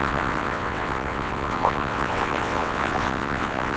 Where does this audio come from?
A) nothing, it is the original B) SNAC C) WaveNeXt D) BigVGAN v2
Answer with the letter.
C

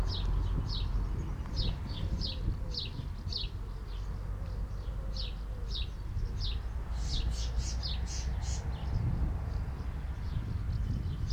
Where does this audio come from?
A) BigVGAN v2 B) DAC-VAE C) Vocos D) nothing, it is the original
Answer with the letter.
D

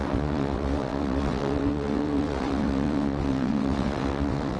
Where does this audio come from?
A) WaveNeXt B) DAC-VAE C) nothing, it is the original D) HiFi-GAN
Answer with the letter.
A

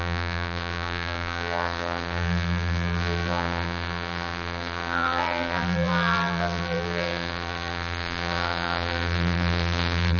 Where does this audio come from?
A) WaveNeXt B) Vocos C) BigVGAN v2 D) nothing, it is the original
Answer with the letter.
C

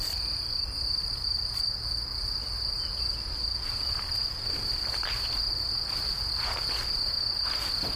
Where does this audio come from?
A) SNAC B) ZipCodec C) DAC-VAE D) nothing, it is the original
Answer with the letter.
D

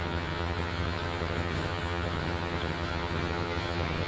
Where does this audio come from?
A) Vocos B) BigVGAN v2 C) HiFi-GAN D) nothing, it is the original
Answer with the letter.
C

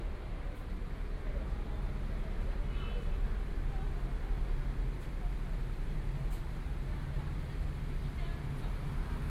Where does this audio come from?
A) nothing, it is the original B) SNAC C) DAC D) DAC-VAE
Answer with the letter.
A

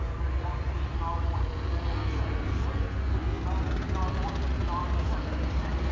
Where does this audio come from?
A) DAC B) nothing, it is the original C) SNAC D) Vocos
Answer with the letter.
B